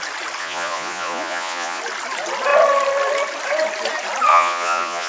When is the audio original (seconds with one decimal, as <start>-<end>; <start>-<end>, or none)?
0.0-0.4; 1.8-4.3